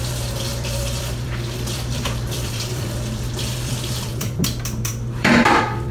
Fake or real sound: fake